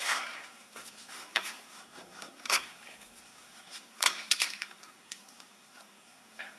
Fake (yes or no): yes